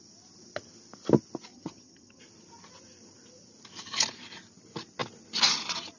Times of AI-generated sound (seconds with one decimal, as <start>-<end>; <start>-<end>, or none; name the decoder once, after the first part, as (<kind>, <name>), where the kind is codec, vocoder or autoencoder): 1.5-2.2 (vocoder, HiFi-GAN)